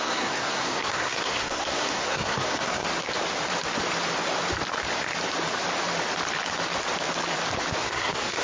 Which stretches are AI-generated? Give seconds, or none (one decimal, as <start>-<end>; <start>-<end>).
0.0-2.8; 7.8-8.4